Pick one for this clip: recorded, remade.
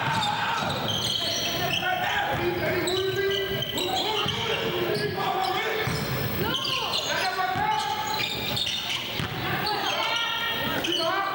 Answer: recorded